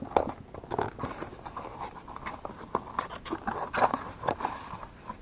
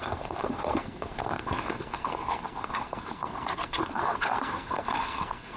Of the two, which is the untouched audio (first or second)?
first